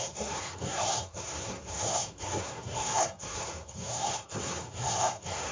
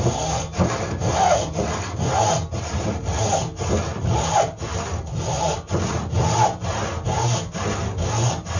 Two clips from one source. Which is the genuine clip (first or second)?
second